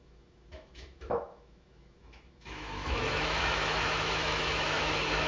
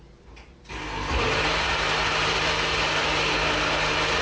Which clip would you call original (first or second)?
second